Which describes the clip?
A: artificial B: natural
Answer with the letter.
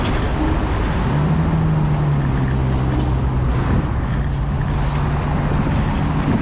B